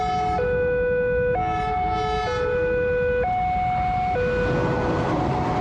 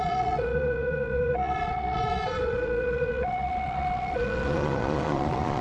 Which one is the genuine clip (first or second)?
first